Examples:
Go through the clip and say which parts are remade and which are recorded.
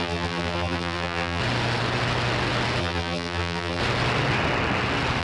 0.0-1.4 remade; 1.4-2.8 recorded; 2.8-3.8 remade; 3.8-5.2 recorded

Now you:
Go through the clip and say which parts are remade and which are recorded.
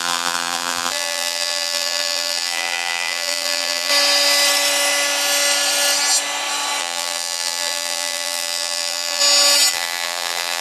0.0-3.9 remade; 3.9-6.8 recorded; 6.8-9.2 remade; 9.2-9.7 recorded; 9.7-10.6 remade